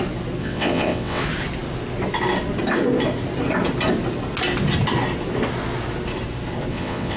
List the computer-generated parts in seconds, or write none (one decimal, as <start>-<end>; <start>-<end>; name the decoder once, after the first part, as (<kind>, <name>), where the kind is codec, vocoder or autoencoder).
0.4-1.2 (vocoder, WaveNeXt); 6.7-7.2